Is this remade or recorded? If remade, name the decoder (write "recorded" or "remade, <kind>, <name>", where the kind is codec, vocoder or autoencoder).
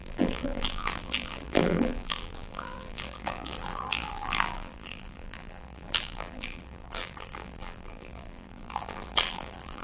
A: remade, vocoder, BigVGAN v2